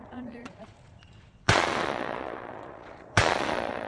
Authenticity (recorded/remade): remade